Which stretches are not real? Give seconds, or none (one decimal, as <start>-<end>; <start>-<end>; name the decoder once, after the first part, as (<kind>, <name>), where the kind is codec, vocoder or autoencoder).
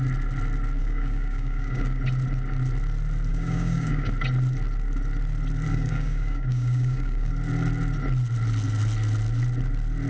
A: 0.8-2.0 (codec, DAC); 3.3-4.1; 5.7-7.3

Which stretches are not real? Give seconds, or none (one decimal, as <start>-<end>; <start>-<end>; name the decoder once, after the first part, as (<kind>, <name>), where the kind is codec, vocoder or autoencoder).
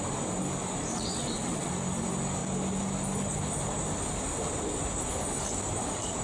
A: 0.9-1.7 (vocoder, WaveNeXt)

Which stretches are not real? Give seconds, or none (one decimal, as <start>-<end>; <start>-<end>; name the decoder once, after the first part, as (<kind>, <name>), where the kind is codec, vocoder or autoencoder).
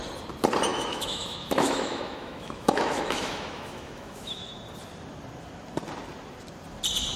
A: 0.7-4.5 (autoencoder, DAC-VAE)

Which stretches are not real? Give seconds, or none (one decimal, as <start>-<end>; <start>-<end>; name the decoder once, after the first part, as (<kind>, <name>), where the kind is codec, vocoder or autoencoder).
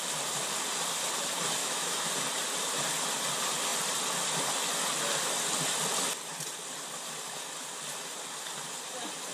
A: 1.6-2.1 (autoencoder, DAC-VAE)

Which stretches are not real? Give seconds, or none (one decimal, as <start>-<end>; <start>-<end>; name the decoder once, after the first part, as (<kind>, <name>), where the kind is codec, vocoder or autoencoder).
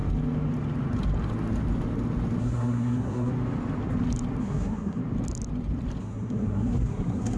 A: 2.4-3.3 (codec, SNAC); 4.4-5.0; 6.0-7.4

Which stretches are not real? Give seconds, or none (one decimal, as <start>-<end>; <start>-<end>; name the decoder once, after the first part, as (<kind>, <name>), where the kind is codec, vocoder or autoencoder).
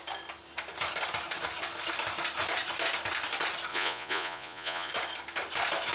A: 3.7-4.9 (vocoder, Vocos)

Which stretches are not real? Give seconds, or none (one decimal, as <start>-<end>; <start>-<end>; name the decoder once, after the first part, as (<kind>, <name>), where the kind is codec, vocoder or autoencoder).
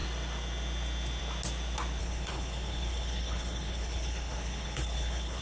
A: 2.0-5.4 (codec, HILCodec)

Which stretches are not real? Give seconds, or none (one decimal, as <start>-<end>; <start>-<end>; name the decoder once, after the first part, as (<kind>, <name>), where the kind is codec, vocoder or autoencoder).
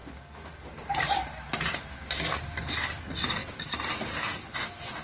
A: none